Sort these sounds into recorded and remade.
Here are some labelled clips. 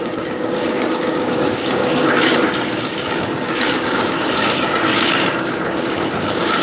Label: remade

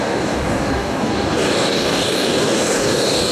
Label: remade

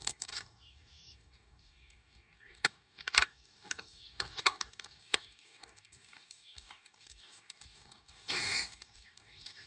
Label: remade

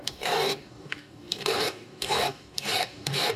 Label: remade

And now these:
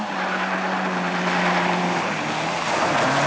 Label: recorded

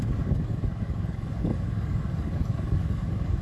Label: remade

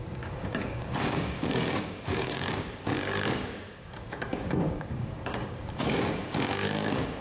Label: remade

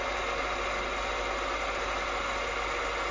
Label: recorded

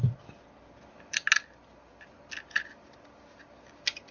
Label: recorded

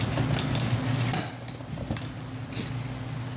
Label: recorded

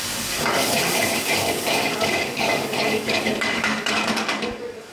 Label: remade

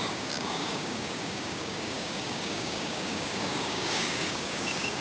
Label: remade